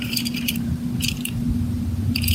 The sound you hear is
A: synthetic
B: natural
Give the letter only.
A